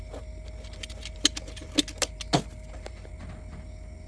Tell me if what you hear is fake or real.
real